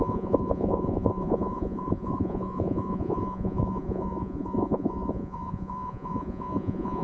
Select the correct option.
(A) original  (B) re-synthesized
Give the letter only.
B